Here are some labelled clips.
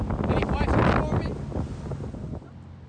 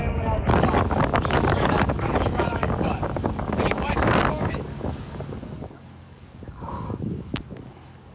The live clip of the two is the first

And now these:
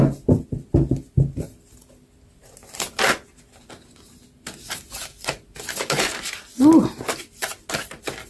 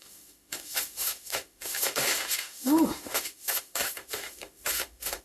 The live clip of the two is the first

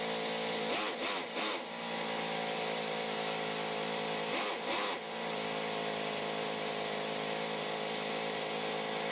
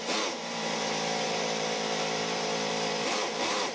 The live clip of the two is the first